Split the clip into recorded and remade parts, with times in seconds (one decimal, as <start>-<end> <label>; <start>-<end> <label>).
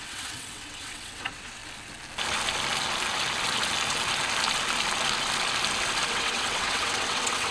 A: 0.0-1.6 remade; 1.6-6.1 recorded; 6.1-7.5 remade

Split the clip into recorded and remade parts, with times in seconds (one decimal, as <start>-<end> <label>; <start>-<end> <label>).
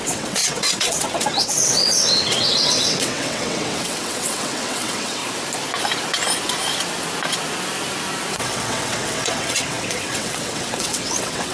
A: 0.0-5.2 remade; 5.2-8.3 recorded; 8.3-11.5 remade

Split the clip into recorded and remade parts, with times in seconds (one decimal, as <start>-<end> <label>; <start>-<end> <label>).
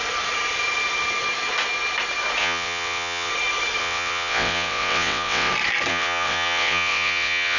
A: 0.0-2.4 recorded; 2.4-3.3 remade; 3.3-3.8 recorded; 3.8-5.5 remade; 5.5-5.9 recorded; 5.9-7.6 remade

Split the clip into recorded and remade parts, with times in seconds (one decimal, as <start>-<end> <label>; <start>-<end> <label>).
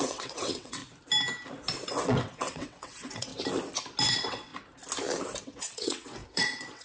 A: 0.0-0.8 remade; 0.8-1.9 recorded; 1.9-3.3 remade; 3.3-4.1 recorded; 4.1-4.5 remade; 4.5-5.4 recorded; 5.4-6.8 remade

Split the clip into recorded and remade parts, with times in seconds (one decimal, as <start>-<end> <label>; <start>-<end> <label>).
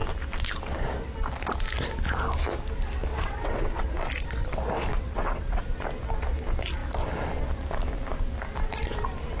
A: 0.0-3.1 recorded; 3.1-3.9 remade; 3.9-4.9 recorded; 4.9-5.6 remade; 5.6-9.4 recorded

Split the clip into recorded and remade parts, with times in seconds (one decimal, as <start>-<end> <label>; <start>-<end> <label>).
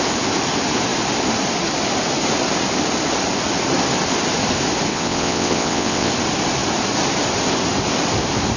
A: 0.0-4.9 recorded; 4.9-6.1 remade; 6.1-8.6 recorded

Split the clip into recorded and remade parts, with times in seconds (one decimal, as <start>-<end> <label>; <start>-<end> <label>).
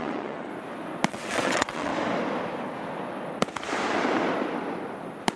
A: 0.0-0.5 remade; 0.5-1.1 recorded; 1.1-1.9 remade; 1.9-5.4 recorded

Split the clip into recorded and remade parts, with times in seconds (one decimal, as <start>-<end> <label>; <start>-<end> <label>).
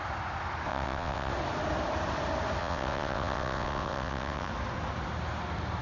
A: 0.0-0.7 recorded; 0.7-1.3 remade; 1.3-2.6 recorded; 2.6-4.5 remade; 4.5-5.8 recorded